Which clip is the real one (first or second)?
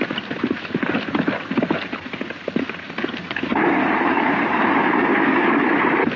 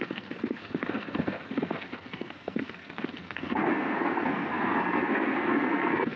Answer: first